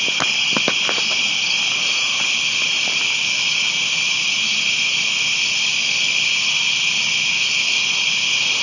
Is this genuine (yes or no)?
yes